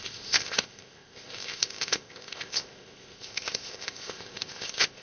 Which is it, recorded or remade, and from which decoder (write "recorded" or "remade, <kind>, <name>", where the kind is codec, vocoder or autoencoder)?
remade, codec, ZipCodec